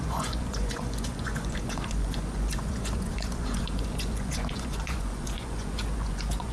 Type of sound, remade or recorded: remade